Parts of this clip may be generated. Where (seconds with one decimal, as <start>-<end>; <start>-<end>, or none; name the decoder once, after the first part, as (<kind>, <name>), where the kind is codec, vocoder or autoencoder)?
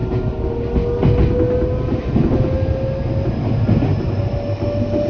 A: none